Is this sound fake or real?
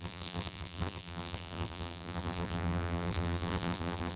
fake